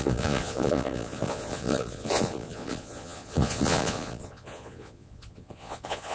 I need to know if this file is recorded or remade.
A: remade